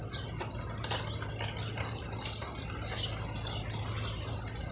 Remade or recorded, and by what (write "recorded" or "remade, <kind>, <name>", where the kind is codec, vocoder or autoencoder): recorded